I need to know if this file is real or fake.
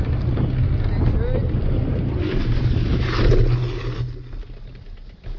real